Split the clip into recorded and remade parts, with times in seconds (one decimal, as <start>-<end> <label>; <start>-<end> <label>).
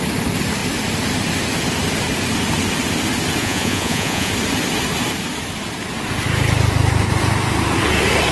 0.0-3.4 recorded; 3.4-4.3 remade; 4.3-8.3 recorded